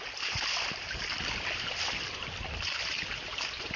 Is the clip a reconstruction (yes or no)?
no